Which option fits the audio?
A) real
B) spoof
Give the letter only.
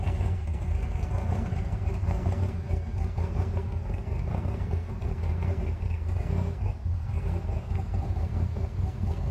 B